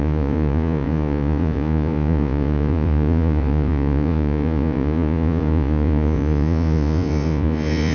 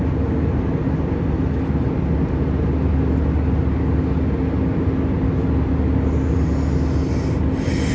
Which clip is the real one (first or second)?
second